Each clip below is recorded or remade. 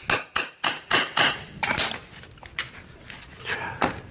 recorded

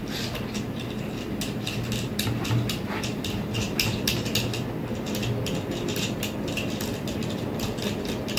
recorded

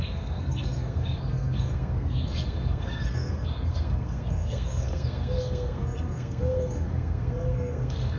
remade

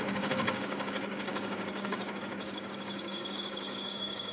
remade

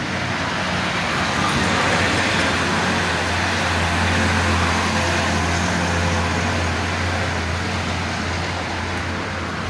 recorded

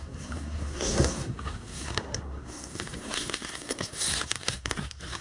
remade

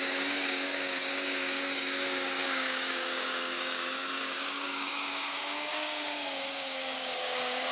remade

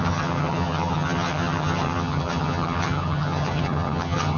remade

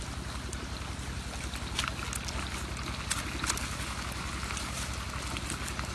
recorded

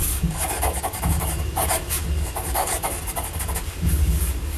remade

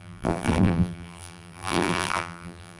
remade